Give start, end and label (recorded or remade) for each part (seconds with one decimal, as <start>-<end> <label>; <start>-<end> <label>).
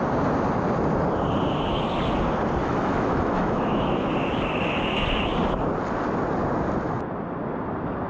0.0-2.6 recorded; 2.6-4.1 remade; 4.1-8.1 recorded